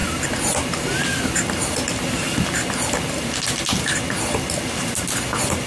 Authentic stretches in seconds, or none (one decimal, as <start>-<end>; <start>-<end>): 0.0-5.7